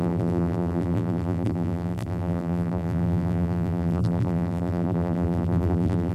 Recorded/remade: remade